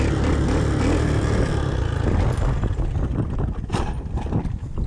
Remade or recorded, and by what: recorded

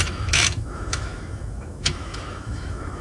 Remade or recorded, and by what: remade, autoencoder, DAC-VAE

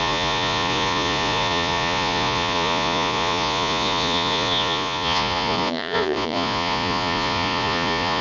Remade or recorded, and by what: remade, vocoder, Vocos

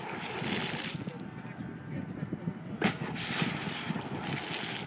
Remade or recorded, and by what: recorded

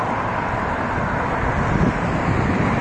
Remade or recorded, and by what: recorded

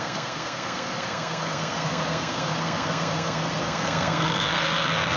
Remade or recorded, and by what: remade, codec, SNAC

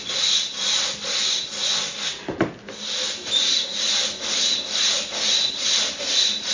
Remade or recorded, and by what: recorded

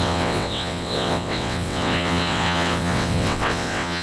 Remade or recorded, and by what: remade, vocoder, WaveNeXt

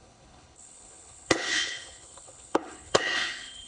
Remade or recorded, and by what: remade, codec, HILCodec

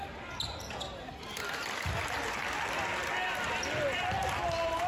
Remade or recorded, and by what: recorded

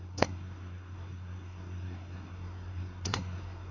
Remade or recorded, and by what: remade, codec, SNAC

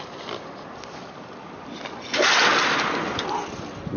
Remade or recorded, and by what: recorded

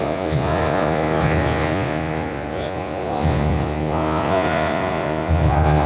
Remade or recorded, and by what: remade, vocoder, Vocos